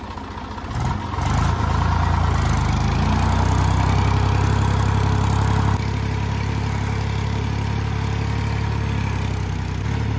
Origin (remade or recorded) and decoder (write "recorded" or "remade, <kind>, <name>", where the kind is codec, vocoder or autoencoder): recorded